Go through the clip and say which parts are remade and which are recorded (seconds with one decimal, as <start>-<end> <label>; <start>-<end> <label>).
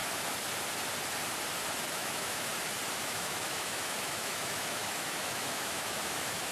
0.0-1.9 recorded; 1.9-2.5 remade; 2.5-3.0 recorded; 3.0-6.5 remade